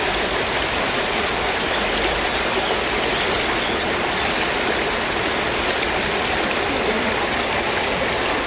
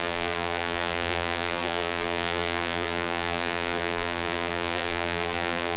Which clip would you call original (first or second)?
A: first